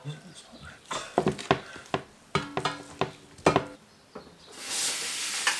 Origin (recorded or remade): recorded